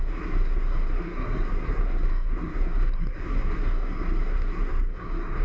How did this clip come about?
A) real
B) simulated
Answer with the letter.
B